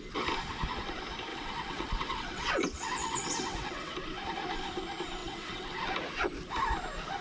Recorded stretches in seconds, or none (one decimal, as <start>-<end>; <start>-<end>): 0.0-1.3; 3.9-5.2; 5.8-7.2